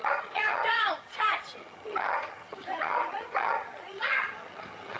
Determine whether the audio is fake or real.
fake